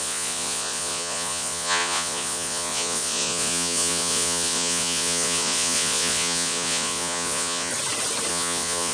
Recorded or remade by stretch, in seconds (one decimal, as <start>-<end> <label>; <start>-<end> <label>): 0.0-7.7 remade; 7.7-8.3 recorded; 8.3-8.9 remade